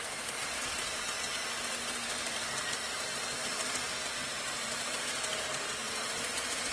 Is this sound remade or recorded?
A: recorded